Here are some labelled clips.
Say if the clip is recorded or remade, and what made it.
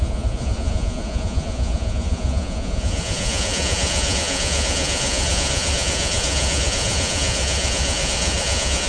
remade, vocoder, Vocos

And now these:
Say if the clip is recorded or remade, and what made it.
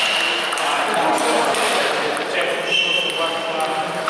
recorded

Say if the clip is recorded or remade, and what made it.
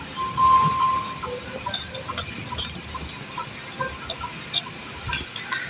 recorded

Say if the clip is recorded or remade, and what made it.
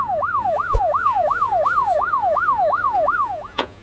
remade, vocoder, Vocos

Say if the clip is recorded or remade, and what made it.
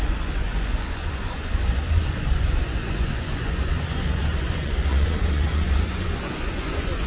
remade, vocoder, Vocos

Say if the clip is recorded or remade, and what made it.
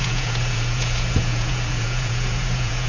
remade, vocoder, Vocos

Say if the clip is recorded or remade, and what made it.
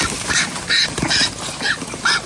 recorded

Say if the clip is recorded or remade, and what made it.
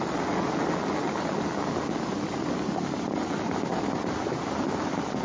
recorded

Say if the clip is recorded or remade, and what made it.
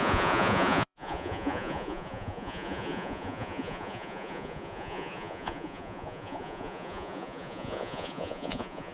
remade, vocoder, Vocos